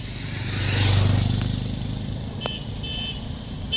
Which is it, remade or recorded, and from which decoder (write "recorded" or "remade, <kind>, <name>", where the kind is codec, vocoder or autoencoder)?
recorded